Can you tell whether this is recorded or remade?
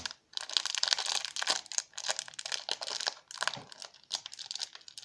recorded